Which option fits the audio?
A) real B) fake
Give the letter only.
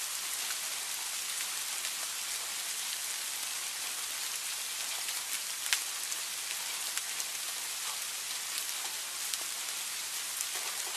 A